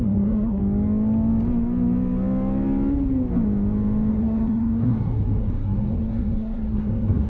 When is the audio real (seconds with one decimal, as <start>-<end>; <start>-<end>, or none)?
0.6-4.1